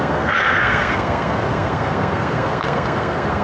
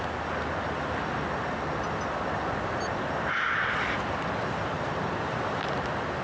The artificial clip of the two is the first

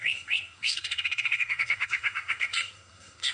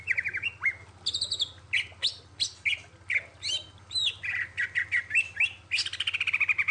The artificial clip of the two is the first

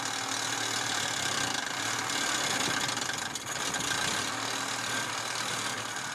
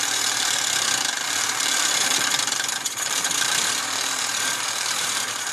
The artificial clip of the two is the second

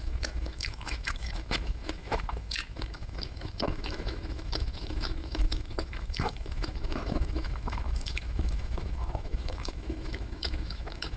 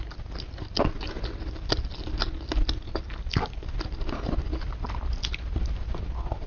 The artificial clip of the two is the first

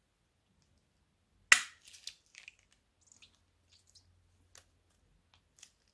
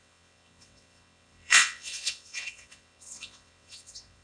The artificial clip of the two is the second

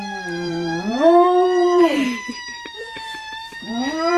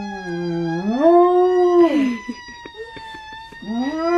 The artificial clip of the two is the first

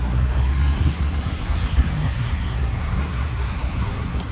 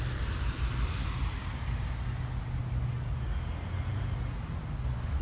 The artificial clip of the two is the first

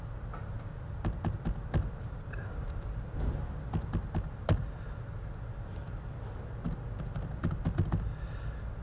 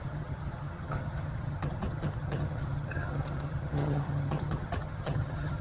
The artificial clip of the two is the second